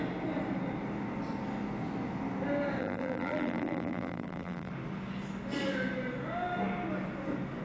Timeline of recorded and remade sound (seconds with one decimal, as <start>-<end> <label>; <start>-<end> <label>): 0.0-2.8 recorded; 2.8-4.7 remade; 4.7-7.6 recorded